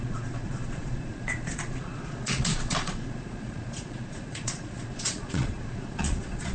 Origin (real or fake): fake